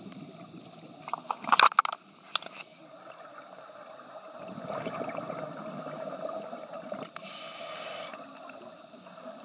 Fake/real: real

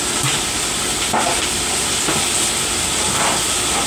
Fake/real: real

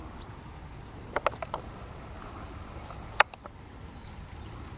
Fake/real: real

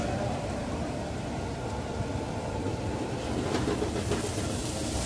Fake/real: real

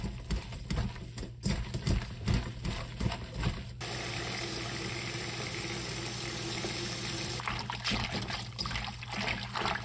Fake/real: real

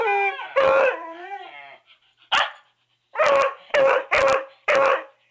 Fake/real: real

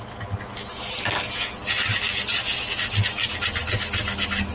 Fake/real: real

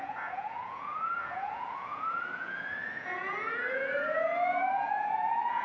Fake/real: fake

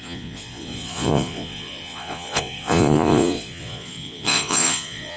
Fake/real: fake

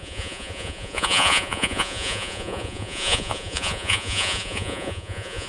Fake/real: fake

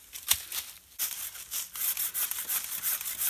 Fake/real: real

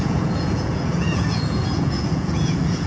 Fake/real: fake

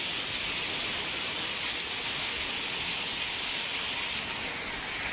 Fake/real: real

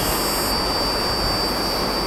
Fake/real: real